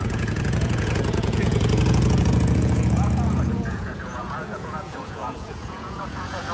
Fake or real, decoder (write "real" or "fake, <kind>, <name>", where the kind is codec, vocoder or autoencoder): fake, vocoder, Vocos